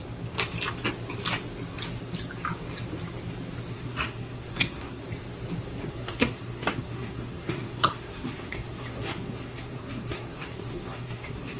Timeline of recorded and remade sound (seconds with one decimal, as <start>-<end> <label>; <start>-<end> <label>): 0.0-3.7 recorded; 3.7-5.0 remade; 5.0-5.9 recorded; 5.9-11.6 remade